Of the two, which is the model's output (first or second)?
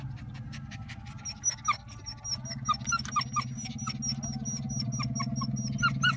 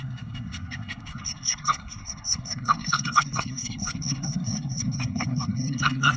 second